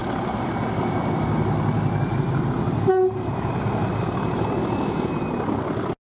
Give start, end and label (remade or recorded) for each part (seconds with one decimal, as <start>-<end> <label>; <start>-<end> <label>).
0.0-6.1 recorded